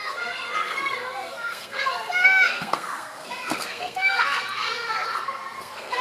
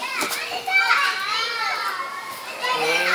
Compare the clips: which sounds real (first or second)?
second